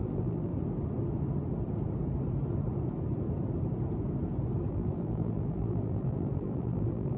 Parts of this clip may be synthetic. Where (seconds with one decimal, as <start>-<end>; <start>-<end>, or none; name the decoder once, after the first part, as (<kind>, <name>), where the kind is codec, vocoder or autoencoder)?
0.0-0.5 (vocoder, BigVGAN v2); 4.7-7.2

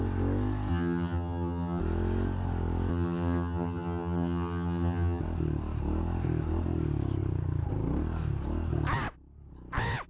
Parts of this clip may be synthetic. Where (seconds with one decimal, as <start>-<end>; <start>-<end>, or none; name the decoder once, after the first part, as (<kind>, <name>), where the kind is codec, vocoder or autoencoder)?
0.7-1.8 (vocoder, HiFi-GAN); 2.9-5.2